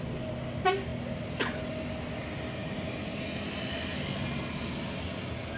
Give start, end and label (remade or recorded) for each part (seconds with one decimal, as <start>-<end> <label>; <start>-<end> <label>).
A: 0.0-5.6 recorded